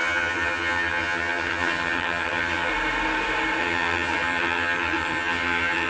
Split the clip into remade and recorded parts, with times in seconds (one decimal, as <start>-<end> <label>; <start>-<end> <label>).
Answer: 0.0-2.7 remade; 2.7-3.6 recorded; 3.6-5.9 remade